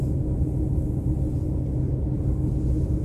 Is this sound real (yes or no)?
yes